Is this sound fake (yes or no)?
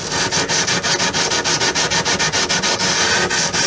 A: no